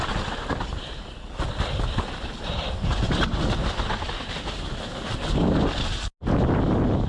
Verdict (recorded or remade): recorded